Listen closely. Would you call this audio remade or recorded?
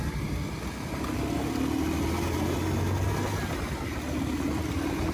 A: recorded